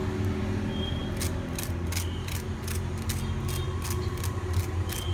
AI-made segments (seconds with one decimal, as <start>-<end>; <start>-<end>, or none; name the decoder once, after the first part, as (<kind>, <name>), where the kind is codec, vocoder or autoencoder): none